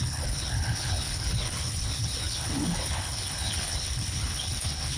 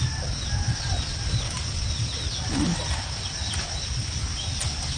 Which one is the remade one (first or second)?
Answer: first